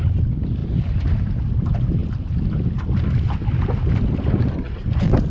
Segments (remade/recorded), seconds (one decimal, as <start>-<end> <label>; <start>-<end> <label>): 0.0-0.6 recorded; 0.6-1.4 remade; 1.4-5.3 recorded